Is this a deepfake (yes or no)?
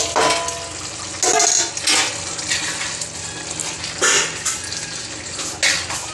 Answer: no